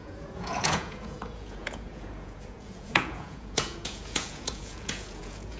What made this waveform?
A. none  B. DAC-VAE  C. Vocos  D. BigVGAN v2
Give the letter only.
C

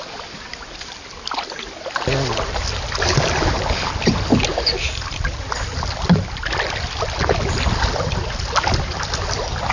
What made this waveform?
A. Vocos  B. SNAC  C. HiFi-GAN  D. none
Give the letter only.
D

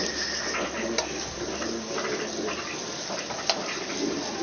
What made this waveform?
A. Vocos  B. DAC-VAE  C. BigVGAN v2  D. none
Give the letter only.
D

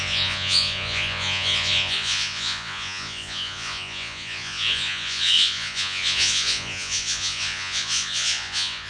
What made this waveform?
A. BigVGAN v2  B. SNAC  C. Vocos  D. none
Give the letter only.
C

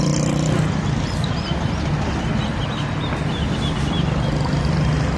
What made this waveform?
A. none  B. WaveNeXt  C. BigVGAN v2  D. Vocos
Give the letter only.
A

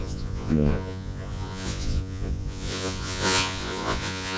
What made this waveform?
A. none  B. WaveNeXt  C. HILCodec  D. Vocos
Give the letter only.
D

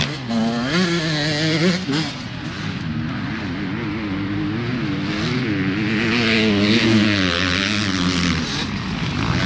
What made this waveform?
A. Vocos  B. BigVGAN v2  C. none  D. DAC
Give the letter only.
C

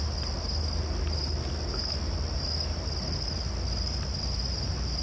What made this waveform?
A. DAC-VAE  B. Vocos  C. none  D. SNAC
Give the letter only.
C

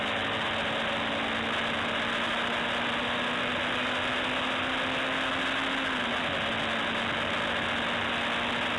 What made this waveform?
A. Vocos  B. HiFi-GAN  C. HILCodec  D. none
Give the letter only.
D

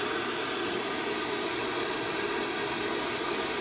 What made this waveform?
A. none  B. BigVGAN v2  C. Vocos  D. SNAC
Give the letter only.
A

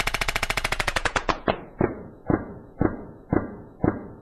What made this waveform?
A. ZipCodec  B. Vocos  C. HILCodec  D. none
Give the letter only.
B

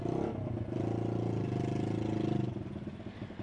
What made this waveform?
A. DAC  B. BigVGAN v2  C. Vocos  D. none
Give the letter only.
D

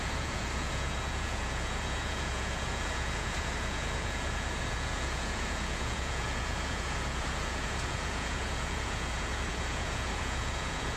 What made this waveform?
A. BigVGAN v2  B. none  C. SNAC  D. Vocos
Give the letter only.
D